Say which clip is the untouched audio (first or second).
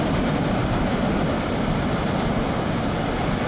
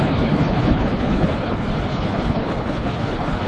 first